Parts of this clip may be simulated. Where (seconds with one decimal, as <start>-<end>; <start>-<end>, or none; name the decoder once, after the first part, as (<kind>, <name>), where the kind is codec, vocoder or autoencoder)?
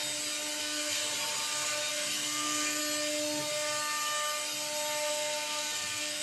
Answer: 0.6-1.0 (codec, SNAC); 1.9-2.8; 5.1-6.2